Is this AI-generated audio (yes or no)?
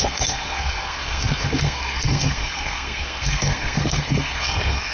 yes